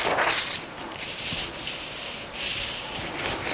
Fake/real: real